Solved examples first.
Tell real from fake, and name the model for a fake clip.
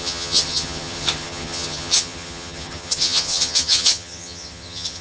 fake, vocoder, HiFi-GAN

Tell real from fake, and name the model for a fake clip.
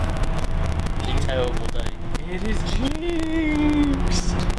real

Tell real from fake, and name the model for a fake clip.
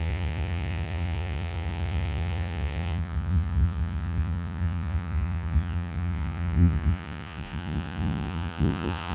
fake, vocoder, Vocos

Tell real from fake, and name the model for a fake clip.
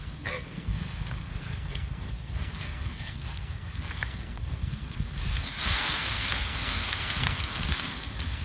fake, codec, SNAC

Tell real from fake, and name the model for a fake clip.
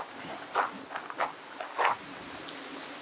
real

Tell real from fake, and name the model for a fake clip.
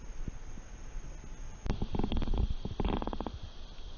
real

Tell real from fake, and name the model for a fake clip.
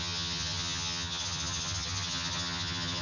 fake, vocoder, HiFi-GAN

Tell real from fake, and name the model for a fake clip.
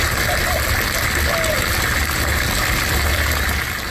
real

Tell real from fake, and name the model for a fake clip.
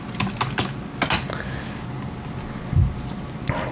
real